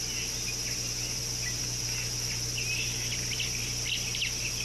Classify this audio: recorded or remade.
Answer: recorded